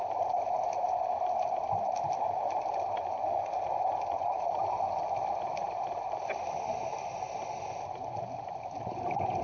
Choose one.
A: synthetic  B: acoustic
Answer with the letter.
B